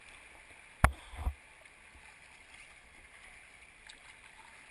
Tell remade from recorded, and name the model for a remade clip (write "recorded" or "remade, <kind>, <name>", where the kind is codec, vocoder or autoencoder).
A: recorded